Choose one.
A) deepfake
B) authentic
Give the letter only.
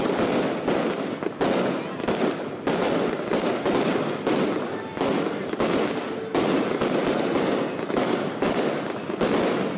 B